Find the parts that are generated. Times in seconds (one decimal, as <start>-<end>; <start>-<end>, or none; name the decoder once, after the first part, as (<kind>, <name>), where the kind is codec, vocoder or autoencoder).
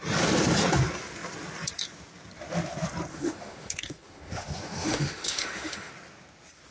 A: 3.1-5.9 (autoencoder, DAC-VAE)